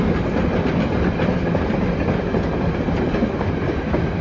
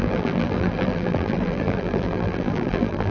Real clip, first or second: first